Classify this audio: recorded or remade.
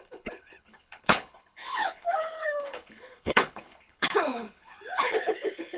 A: remade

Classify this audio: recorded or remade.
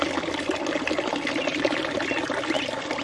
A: recorded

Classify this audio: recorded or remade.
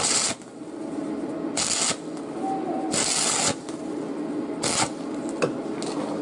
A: recorded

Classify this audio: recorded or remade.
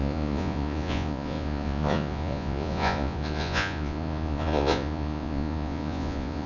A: remade